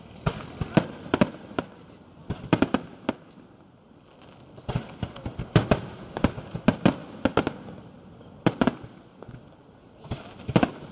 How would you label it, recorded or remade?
recorded